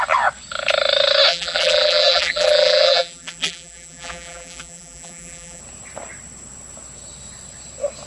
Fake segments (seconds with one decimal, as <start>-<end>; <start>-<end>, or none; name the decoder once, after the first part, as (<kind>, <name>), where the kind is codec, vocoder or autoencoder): 1.3-5.6 (vocoder, BigVGAN v2)

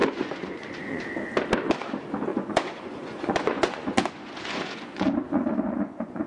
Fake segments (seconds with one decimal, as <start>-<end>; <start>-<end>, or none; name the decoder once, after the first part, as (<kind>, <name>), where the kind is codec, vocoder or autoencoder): 0.0-1.0 (vocoder, Vocos); 2.3-6.3

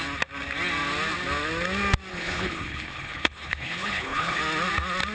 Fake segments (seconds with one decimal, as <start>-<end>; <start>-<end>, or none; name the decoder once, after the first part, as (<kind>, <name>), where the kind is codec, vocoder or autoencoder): 2.1-4.4 (codec, HILCodec)

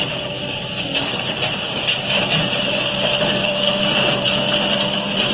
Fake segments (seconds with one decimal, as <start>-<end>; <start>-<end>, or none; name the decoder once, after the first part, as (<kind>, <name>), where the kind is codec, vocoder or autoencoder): 1.1-2.2 (codec, DAC); 3.4-3.9

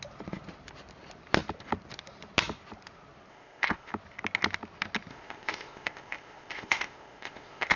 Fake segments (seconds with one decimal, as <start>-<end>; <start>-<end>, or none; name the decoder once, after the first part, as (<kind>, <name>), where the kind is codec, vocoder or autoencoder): 3.3-3.9 (codec, ZipCodec); 5.1-7.8

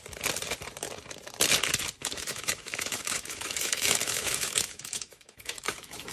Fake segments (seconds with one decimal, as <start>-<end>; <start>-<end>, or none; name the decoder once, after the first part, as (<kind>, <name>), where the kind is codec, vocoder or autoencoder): 2.0-6.1 (autoencoder, DAC-VAE)